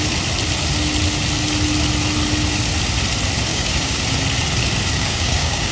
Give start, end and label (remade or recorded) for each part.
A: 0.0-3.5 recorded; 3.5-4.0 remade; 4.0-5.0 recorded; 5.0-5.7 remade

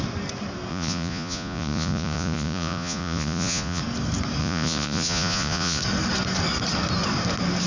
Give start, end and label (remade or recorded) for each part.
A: 0.0-0.7 recorded; 0.7-3.8 remade; 3.8-4.4 recorded; 4.4-5.8 remade; 5.8-7.7 recorded

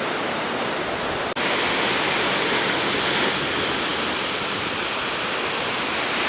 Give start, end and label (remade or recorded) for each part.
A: 0.0-6.3 recorded

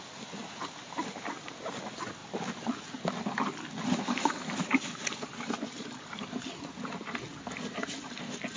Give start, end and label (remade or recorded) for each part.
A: 0.0-0.4 recorded; 0.4-1.6 remade; 1.6-8.6 recorded

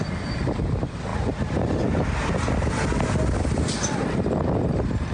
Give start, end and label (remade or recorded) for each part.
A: 0.0-5.1 recorded

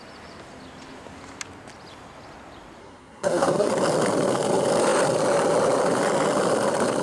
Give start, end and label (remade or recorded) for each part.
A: 0.0-2.8 recorded; 2.8-3.7 remade; 3.7-7.0 recorded